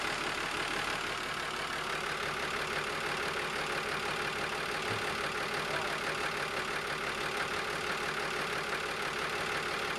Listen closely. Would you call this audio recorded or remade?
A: recorded